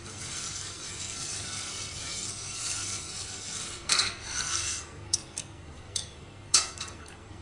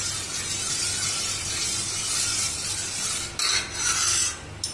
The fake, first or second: first